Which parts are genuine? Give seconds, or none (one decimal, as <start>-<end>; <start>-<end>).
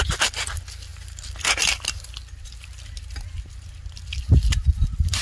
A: 0.0-5.2